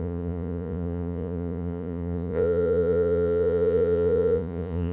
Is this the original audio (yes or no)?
no